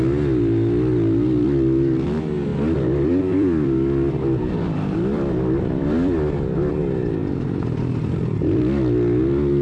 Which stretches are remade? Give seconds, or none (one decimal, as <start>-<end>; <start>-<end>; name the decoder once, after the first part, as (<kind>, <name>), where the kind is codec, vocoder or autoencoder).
2.5-6.7 (vocoder, BigVGAN v2); 7.2-8.6